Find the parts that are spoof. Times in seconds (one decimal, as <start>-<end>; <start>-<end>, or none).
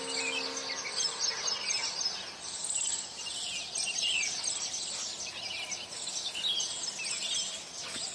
none